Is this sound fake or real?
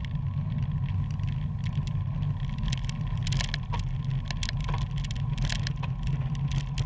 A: real